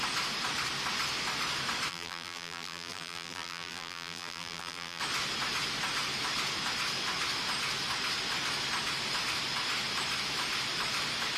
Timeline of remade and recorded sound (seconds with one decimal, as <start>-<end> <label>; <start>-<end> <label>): 0.0-1.9 recorded; 1.9-5.0 remade; 5.0-11.4 recorded